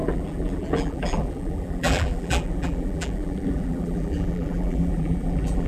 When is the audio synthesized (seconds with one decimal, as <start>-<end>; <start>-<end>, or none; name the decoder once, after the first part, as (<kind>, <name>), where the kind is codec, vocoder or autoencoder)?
0.0-5.7 (vocoder, BigVGAN v2)